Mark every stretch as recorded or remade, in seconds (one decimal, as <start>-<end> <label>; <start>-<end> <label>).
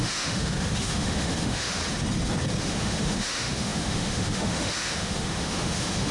0.0-1.8 remade; 1.8-2.6 recorded; 2.6-6.1 remade